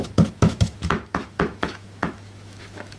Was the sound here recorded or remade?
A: remade